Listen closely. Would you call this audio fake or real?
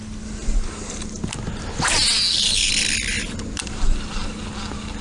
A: real